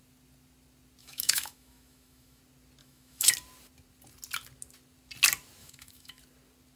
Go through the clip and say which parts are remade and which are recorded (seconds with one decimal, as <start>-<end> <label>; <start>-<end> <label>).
0.0-1.0 recorded; 1.0-2.4 remade; 2.4-2.8 recorded; 2.8-3.3 remade; 3.3-5.6 recorded; 5.6-6.2 remade; 6.2-6.8 recorded